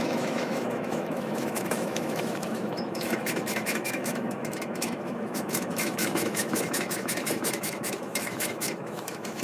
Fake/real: fake